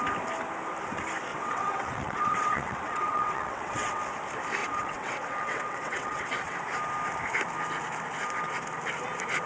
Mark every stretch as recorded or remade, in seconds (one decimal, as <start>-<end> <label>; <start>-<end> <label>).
0.0-1.3 recorded; 1.3-4.0 remade; 4.0-4.6 recorded; 4.6-6.6 remade; 6.6-9.5 recorded